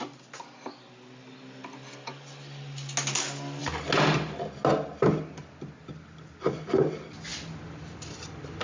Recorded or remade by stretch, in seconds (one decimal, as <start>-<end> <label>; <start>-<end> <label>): 0.0-8.6 recorded